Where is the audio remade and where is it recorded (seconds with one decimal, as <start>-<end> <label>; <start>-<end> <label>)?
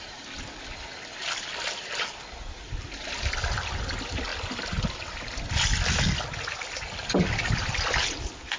0.0-8.6 recorded